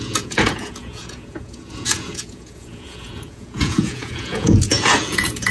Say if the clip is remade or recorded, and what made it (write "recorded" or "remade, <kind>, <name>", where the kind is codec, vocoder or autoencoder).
remade, vocoder, Vocos